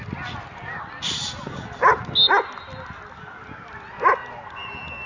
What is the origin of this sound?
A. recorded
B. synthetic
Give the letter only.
A